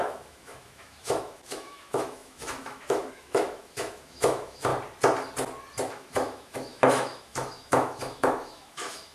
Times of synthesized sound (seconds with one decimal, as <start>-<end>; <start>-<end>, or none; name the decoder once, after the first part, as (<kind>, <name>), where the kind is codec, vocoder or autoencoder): 0.0-4.7 (autoencoder, DAC-VAE); 5.9-9.1

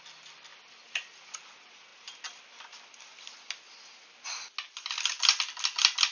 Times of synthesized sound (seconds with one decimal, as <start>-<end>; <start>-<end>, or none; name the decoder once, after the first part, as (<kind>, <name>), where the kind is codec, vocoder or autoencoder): 0.5-1.2 (vocoder, BigVGAN v2); 3.1-4.0